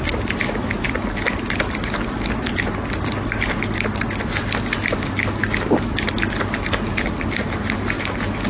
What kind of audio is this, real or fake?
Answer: real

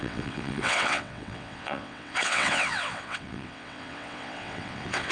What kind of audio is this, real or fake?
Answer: fake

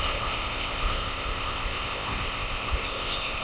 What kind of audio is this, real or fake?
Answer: fake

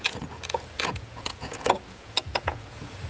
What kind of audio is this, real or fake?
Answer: fake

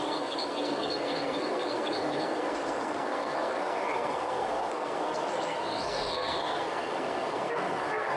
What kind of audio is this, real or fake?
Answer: fake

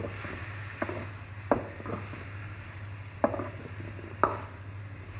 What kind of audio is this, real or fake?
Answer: real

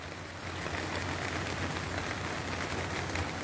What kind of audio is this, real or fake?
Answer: real